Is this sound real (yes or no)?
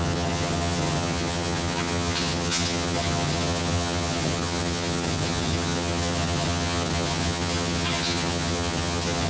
no